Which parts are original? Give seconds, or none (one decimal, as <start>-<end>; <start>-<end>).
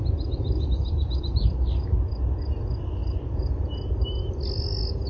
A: 0.0-5.1